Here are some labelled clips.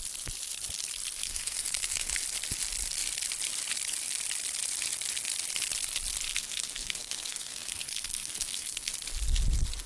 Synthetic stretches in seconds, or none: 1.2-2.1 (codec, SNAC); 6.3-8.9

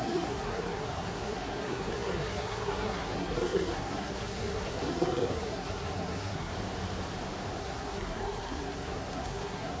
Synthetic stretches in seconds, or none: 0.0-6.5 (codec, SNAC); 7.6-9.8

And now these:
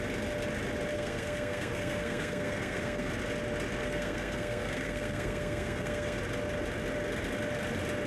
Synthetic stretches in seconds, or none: 0.9-3.1 (codec, SNAC); 3.8-6.2